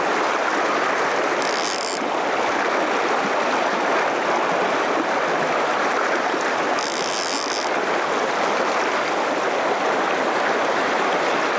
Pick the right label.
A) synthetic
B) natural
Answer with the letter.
B